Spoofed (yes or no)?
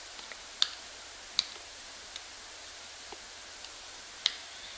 no